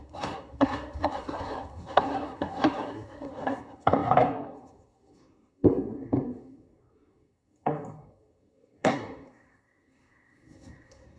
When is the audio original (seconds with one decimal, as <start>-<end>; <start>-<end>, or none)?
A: none